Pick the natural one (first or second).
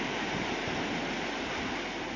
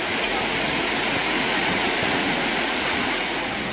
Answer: first